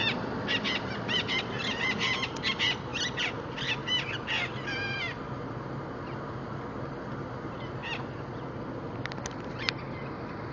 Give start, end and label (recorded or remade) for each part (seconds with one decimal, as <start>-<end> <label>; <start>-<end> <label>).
0.0-10.5 recorded

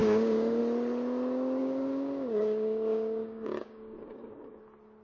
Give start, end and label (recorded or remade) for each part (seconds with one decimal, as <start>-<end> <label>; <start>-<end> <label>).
0.0-0.6 remade; 0.6-1.6 recorded; 1.6-4.6 remade; 4.6-5.0 recorded

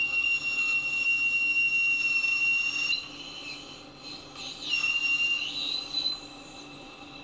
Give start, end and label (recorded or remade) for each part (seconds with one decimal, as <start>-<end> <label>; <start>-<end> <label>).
0.0-7.2 recorded

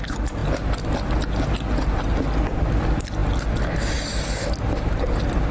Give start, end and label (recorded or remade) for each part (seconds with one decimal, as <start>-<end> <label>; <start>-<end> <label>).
0.0-5.5 recorded

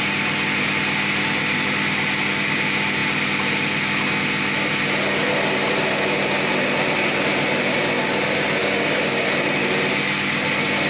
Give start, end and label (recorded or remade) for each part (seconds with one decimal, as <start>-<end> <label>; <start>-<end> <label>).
0.0-8.6 recorded; 8.6-9.3 remade; 9.3-10.9 recorded

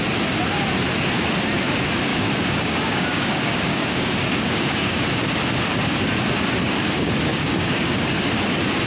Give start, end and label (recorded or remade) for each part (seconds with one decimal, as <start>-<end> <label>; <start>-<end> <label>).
0.0-2.1 recorded; 2.1-5.2 remade; 5.2-7.3 recorded; 7.3-8.1 remade; 8.1-8.9 recorded

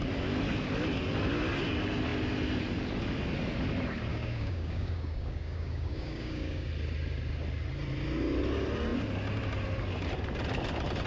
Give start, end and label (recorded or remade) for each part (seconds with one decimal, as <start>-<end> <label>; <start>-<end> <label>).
0.0-4.1 recorded; 4.1-6.7 remade; 6.7-11.1 recorded

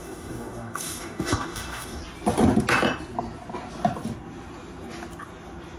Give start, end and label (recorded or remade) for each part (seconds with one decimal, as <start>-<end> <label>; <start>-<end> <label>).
0.0-2.0 remade; 2.0-5.8 recorded